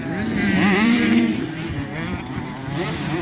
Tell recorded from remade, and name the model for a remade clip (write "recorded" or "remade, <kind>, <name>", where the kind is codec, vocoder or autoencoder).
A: remade, vocoder, BigVGAN v2